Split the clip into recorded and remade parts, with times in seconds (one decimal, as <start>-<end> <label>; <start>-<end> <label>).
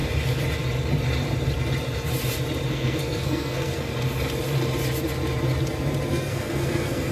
0.0-2.7 recorded; 2.7-3.9 remade; 3.9-6.1 recorded; 6.1-7.1 remade